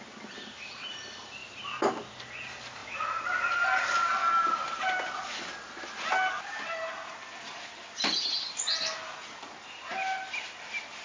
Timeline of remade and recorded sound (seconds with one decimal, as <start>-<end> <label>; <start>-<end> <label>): 0.0-11.0 recorded

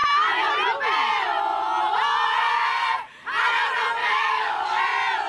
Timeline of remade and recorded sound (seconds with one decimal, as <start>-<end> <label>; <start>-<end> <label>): 0.0-4.0 recorded; 4.0-4.8 remade; 4.8-5.3 recorded

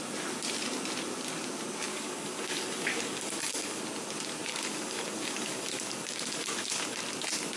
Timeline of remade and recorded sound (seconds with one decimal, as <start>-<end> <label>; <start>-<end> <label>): 0.0-1.9 recorded; 1.9-3.8 remade; 3.8-4.5 recorded; 4.5-7.0 remade; 7.0-7.6 recorded

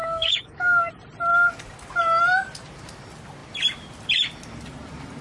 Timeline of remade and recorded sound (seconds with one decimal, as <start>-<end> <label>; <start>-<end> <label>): 0.0-0.9 remade; 0.9-5.2 recorded

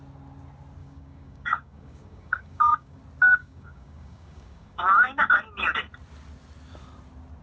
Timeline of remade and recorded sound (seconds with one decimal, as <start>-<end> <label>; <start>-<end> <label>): 0.0-0.8 recorded; 0.8-3.0 remade; 3.0-3.4 recorded; 3.4-5.3 remade; 5.3-7.4 recorded

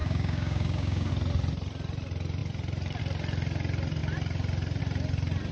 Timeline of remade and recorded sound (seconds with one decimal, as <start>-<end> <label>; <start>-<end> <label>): 0.0-1.1 remade; 1.1-5.5 recorded

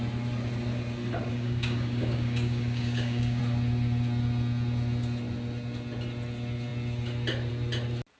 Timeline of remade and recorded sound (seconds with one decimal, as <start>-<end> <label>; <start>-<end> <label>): 0.0-1.3 recorded; 1.3-3.4 remade; 3.4-8.2 recorded

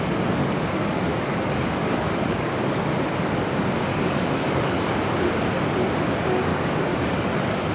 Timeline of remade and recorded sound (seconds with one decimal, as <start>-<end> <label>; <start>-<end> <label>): 0.0-0.4 recorded; 0.4-2.8 remade; 2.8-3.9 recorded; 3.9-5.4 remade; 5.4-6.5 recorded; 6.5-7.7 remade